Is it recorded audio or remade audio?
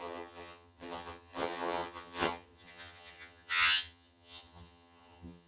remade